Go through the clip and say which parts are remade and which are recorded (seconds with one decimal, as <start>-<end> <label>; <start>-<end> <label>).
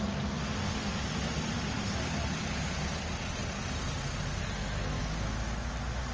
0.0-4.4 recorded; 4.4-5.0 remade; 5.0-6.1 recorded